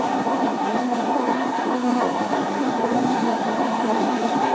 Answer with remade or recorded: remade